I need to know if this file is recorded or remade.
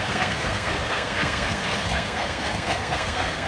remade